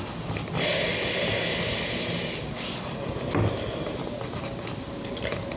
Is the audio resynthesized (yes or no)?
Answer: no